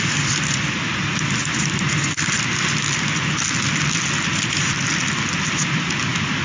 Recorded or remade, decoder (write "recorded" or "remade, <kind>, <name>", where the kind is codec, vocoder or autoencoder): recorded